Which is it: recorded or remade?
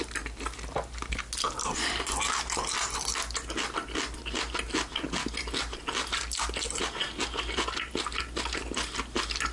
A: recorded